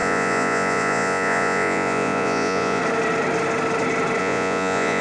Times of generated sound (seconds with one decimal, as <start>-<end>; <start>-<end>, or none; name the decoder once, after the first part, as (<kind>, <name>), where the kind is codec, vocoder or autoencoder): 0.0-2.8 (vocoder, Vocos); 4.2-5.0